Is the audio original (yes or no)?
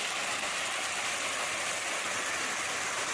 yes